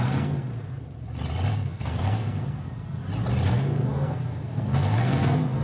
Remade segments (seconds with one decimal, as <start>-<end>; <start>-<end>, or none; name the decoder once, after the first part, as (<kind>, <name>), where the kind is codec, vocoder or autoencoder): 0.0-0.5 (codec, SNAC); 1.5-3.0; 3.5-5.6